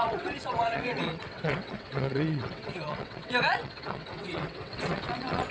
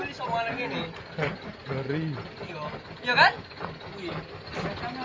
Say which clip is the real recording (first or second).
second